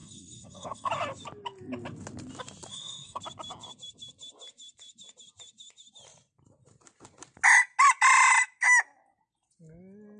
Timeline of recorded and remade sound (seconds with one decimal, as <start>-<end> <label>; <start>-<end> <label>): 0.0-0.9 remade; 0.9-2.7 recorded; 2.7-3.2 remade; 3.2-10.2 recorded